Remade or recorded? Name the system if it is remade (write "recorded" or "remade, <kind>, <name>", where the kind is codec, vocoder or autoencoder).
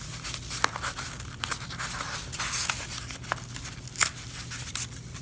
recorded